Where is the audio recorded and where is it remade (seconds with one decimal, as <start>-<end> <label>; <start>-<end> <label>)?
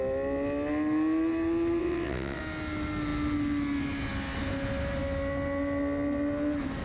0.0-1.8 recorded; 1.8-2.4 remade; 2.4-6.8 recorded